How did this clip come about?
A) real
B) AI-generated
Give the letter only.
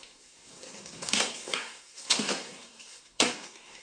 B